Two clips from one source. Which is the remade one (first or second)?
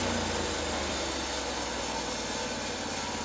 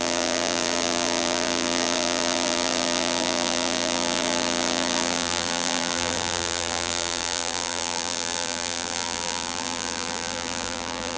second